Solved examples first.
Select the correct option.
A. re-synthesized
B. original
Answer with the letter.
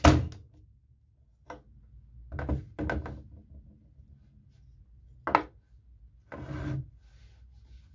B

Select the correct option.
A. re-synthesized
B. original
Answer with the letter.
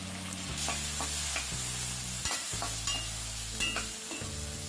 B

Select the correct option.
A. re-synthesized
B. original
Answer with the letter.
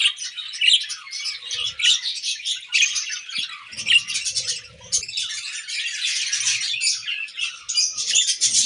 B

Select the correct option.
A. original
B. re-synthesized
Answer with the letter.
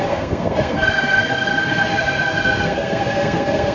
B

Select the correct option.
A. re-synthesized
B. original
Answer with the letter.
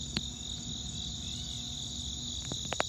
B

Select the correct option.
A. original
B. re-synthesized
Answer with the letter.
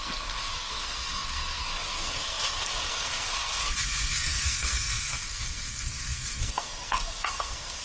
B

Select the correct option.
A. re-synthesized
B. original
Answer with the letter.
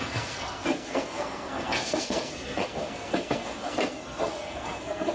A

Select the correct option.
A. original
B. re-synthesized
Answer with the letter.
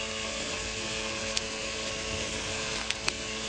B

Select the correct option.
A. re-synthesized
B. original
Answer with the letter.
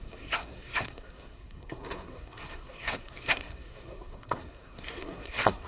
A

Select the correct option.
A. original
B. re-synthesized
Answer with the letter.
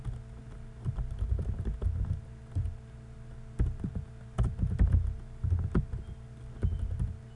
A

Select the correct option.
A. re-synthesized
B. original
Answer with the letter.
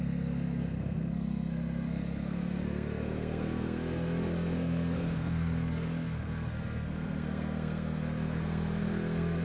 A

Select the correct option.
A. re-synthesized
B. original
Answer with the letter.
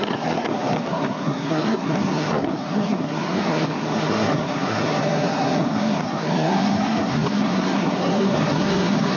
A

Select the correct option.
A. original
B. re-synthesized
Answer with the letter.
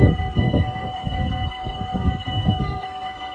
B